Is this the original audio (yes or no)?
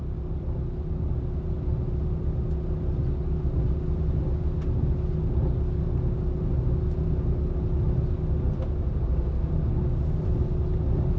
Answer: yes